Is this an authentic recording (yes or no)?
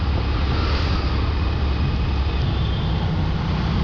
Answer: yes